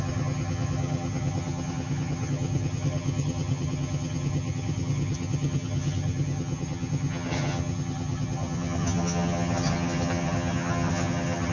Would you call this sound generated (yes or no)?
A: yes